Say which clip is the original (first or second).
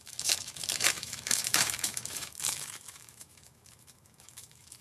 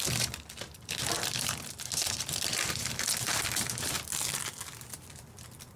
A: second